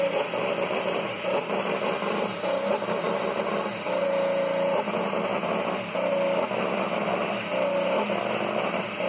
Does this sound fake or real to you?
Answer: real